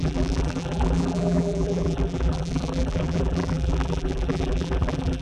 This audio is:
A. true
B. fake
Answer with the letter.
B